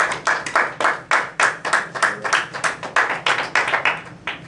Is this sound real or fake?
real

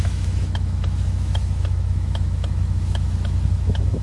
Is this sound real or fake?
fake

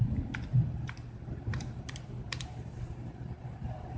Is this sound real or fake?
fake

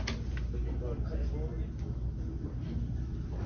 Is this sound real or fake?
real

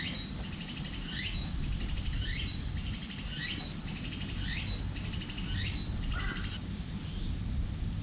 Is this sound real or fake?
real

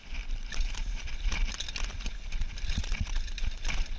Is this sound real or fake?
real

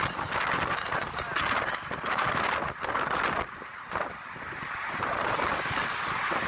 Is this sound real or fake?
real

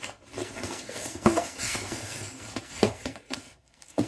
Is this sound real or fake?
fake